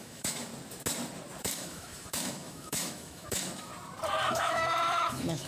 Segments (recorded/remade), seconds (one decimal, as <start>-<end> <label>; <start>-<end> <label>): 0.0-0.5 remade; 0.5-1.4 recorded; 1.4-3.7 remade; 3.7-4.3 recorded; 4.3-5.5 remade